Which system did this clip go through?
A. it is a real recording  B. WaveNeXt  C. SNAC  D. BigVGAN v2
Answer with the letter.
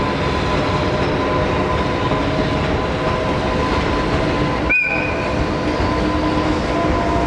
A